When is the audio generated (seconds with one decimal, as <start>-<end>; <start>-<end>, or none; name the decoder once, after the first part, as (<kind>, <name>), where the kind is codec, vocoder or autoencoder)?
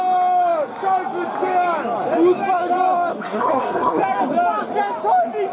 3.1-4.0 (codec, SNAC)